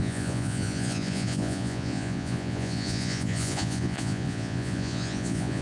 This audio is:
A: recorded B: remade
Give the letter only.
B